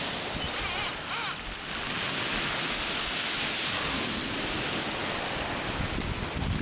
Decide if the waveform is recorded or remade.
recorded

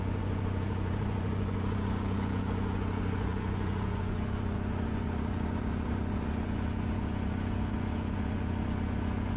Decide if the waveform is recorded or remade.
remade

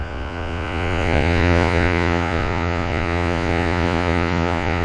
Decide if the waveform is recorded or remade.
remade